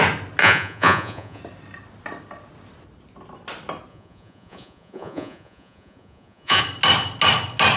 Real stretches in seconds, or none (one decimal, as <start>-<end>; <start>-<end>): 0.0-0.4; 1.4-3.9; 6.6-7.8